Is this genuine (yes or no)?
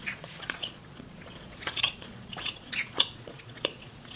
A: no